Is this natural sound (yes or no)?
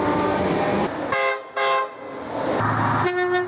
yes